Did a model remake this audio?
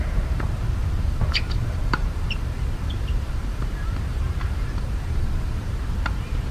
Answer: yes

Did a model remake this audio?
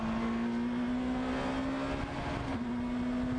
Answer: no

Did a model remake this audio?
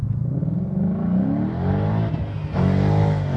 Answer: no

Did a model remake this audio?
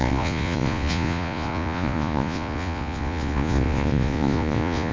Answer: yes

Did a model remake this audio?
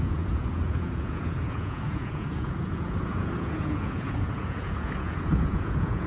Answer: yes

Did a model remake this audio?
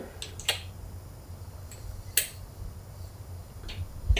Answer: no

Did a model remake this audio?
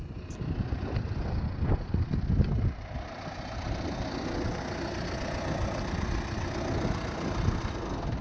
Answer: no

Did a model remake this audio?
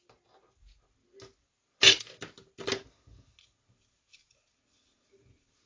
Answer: no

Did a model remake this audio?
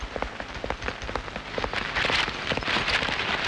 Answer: no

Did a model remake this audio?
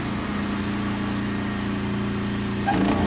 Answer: no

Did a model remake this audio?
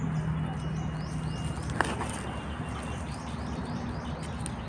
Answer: no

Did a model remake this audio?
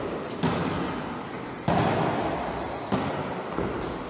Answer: no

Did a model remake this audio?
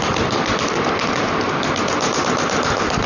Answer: no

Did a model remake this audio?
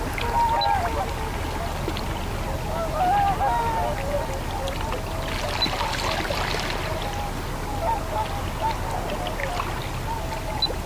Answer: no